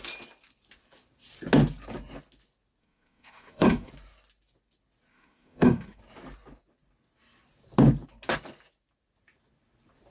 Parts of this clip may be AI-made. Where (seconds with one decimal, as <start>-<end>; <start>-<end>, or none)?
2.8-3.9; 5.1-6.0